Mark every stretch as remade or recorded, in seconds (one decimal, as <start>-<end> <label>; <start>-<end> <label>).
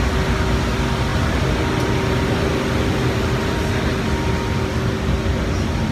0.0-5.9 recorded